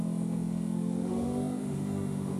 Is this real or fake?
fake